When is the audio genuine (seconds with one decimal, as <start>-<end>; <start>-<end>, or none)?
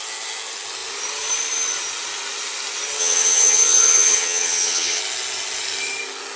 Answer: 0.0-3.0; 5.0-6.4